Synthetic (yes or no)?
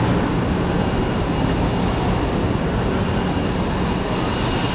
no